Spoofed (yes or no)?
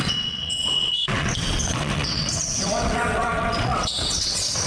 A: yes